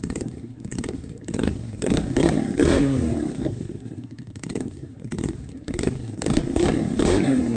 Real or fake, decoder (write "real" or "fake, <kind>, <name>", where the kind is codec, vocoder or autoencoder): fake, codec, SNAC